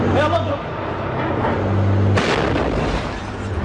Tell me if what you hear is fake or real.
real